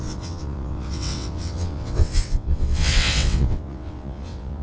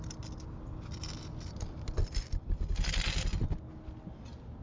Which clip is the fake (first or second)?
first